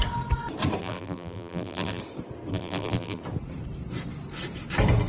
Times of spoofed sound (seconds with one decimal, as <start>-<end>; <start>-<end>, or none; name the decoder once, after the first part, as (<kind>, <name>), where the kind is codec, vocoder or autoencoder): 0.8-2.0 (vocoder, BigVGAN v2); 2.5-3.2